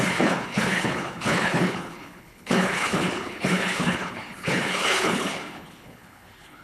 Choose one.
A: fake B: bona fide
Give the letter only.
A